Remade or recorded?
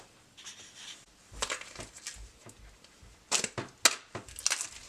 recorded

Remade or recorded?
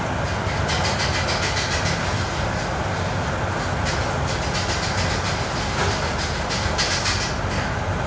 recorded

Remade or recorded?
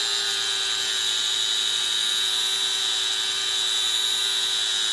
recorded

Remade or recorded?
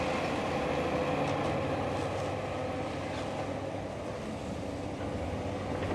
recorded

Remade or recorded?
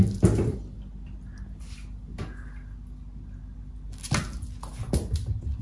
recorded